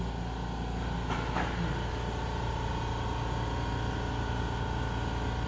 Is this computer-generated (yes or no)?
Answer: no